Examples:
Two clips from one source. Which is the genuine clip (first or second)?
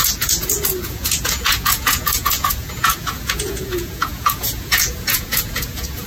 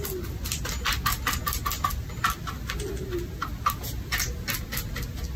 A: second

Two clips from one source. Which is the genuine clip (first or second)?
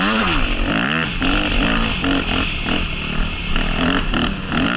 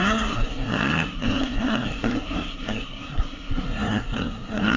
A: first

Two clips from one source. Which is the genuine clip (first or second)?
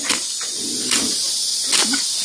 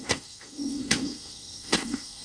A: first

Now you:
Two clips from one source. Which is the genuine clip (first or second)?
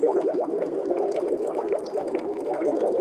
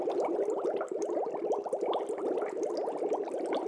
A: second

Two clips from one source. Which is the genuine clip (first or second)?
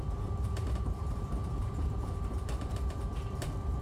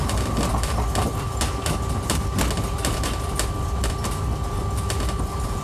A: second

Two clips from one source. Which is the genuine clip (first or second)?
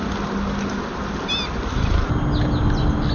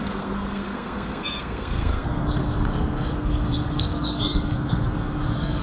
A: first